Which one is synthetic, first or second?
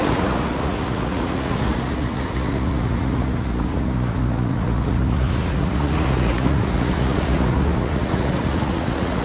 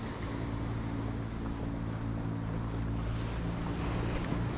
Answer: first